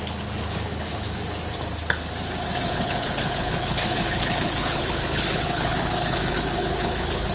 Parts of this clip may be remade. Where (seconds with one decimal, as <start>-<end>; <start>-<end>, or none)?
0.4-1.2; 2.7-7.3